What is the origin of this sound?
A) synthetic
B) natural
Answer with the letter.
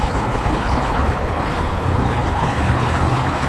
A